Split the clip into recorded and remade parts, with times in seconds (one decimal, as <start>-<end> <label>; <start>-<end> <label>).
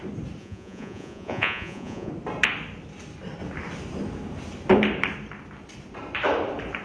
0.0-0.4 recorded; 0.4-2.1 remade; 2.1-6.8 recorded